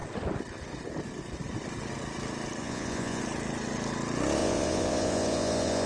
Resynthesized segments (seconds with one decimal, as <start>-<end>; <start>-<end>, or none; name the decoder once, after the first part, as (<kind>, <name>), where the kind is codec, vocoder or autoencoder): 2.6-3.2 (vocoder, Vocos); 4.4-5.9